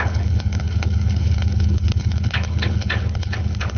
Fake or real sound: fake